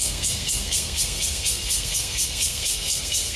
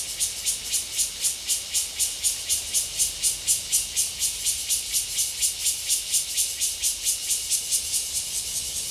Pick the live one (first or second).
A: second